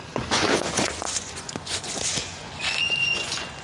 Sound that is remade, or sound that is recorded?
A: remade